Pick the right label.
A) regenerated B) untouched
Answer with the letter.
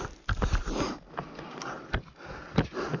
B